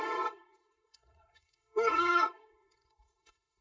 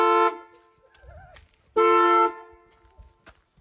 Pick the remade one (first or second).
first